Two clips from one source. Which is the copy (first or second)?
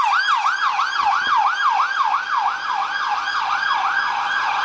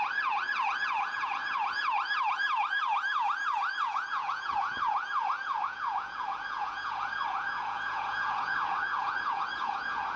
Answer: second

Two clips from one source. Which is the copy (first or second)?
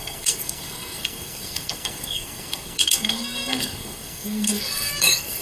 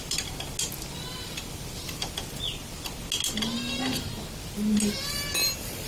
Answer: first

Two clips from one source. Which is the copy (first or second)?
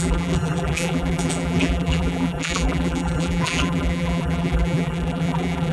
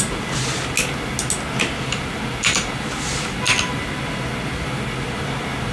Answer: first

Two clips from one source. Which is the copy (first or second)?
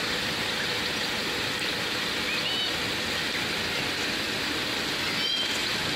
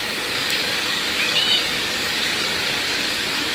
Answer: second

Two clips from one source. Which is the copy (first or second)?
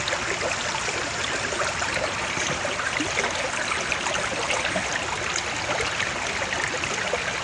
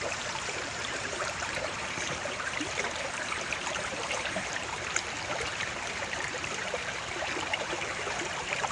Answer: second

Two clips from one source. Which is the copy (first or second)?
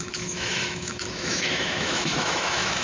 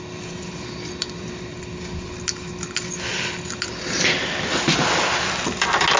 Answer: first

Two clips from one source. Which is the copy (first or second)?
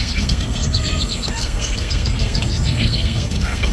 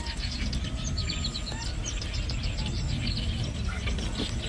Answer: first